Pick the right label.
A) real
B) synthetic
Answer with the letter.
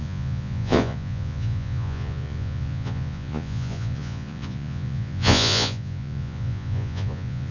B